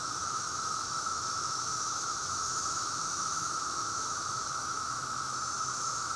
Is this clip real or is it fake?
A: fake